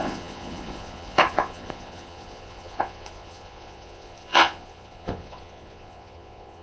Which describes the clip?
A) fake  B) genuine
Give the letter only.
A